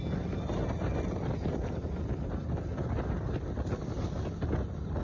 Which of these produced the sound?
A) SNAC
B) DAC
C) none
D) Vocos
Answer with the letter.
C